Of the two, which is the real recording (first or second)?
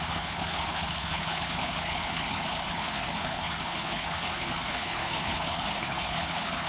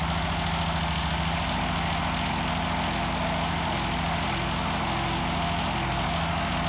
second